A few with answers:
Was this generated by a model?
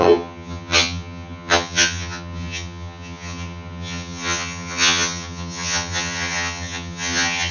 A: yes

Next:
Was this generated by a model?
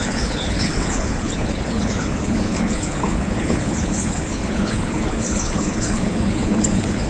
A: yes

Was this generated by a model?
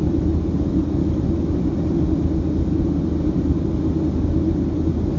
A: no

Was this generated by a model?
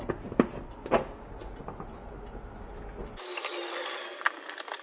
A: no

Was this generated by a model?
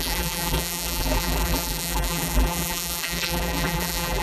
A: yes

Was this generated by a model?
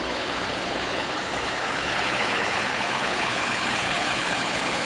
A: yes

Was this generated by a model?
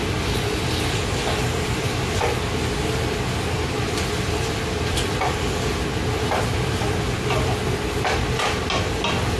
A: no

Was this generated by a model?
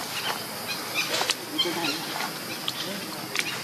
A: no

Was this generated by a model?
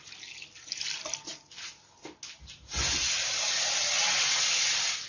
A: no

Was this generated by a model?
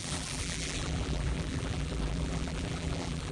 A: yes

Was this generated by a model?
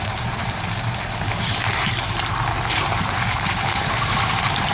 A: yes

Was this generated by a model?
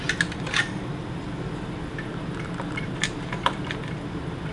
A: no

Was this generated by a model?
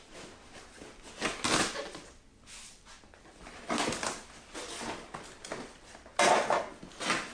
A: no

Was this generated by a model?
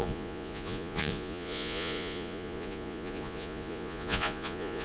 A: yes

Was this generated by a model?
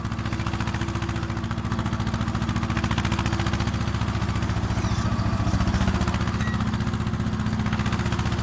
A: no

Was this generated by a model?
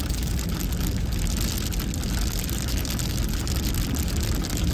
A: no